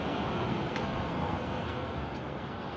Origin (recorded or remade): remade